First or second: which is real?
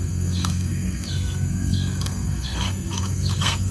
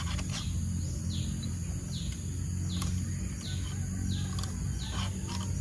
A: second